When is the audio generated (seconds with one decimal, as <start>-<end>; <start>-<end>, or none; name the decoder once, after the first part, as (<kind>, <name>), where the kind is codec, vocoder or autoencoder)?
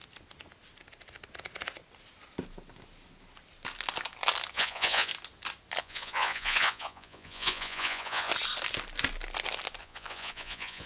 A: 4.5-5.1 (vocoder, Vocos); 5.8-8.3; 9.8-10.9